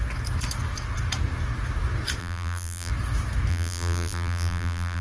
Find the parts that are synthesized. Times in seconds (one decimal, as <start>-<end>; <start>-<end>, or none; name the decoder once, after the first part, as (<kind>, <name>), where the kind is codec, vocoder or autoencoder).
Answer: 2.2-2.9 (vocoder, BigVGAN v2); 3.5-5.0